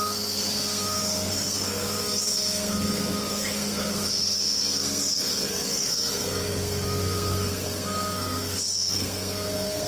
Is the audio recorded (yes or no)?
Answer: no